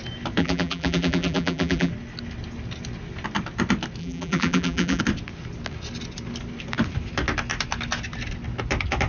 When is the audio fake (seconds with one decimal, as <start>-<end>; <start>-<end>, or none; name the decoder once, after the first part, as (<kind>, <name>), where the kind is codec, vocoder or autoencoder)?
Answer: 0.4-1.9 (vocoder, BigVGAN v2); 4.0-5.0